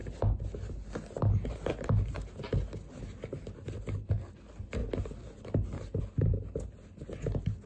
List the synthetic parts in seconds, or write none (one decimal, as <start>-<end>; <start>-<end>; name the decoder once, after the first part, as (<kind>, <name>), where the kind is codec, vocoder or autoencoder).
none